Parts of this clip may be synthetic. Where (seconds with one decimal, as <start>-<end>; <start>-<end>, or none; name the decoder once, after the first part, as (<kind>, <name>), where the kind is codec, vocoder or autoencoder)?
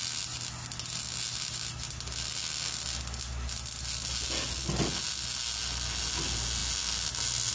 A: none